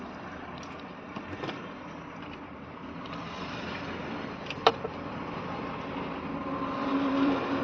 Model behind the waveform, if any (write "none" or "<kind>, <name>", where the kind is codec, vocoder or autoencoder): vocoder, BigVGAN v2